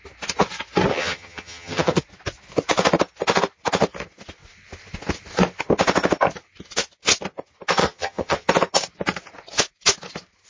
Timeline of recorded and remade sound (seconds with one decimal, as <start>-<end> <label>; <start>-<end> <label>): 0.0-0.9 recorded; 0.9-2.0 remade; 2.0-7.8 recorded; 7.8-8.5 remade; 8.5-10.5 recorded